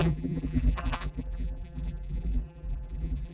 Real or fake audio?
fake